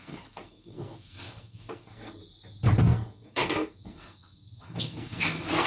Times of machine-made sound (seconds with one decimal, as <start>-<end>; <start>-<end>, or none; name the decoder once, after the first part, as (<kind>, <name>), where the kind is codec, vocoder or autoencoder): 0.0-2.2 (codec, SNAC); 2.8-5.7